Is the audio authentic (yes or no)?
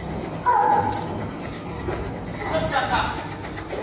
yes